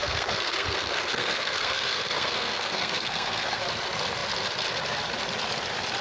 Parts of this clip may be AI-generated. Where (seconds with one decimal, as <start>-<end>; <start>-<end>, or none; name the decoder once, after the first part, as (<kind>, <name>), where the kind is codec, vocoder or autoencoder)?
0.0-3.6 (codec, SNAC)